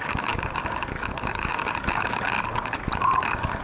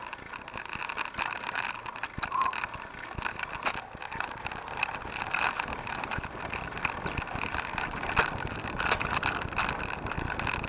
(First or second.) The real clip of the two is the second